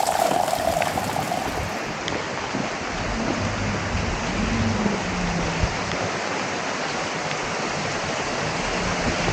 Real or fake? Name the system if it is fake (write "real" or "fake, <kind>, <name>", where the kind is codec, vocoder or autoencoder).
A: real